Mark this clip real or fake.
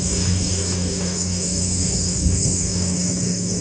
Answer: fake